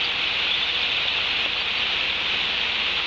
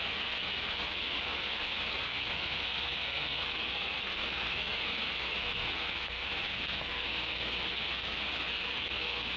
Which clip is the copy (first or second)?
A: second